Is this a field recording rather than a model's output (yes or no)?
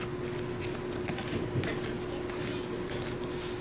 yes